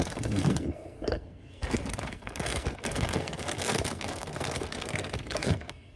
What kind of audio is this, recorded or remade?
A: remade